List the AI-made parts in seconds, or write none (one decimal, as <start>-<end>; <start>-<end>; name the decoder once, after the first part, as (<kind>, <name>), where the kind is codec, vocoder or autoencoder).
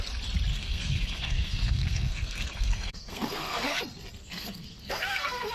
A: 0.5-3.8 (codec, SNAC); 4.2-5.5